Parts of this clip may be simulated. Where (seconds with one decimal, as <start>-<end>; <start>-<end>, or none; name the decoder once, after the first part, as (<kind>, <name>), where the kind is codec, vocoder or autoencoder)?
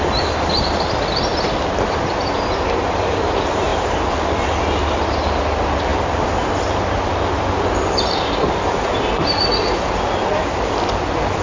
none